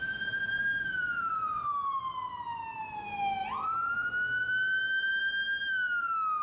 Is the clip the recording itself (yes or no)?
yes